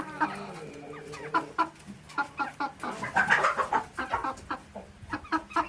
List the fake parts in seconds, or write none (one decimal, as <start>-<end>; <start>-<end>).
0.0-4.2; 5.2-5.7